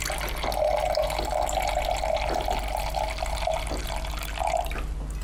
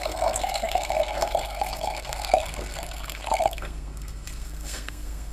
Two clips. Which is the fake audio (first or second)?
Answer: second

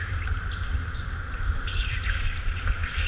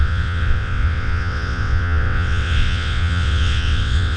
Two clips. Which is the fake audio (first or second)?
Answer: second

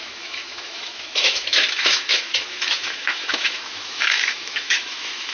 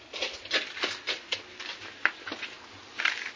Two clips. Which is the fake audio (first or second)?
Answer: first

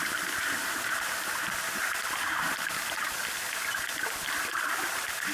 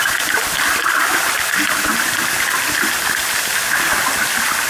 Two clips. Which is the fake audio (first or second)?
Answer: first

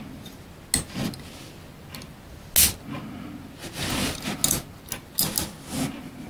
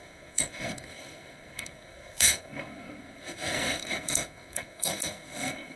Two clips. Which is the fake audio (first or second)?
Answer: second